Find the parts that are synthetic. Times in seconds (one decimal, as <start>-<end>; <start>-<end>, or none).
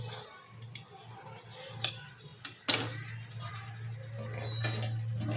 none